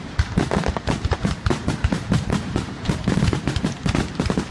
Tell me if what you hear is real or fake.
fake